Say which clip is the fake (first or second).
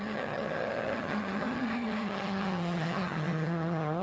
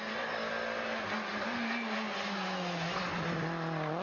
first